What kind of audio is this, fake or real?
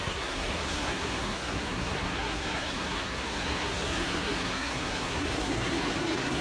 fake